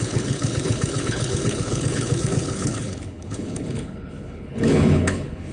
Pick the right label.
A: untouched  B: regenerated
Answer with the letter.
B